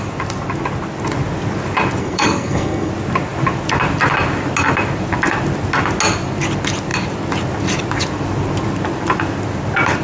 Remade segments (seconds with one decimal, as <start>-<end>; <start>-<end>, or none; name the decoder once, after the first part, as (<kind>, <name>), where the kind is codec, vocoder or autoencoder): 2.0-2.9 (codec, SNAC)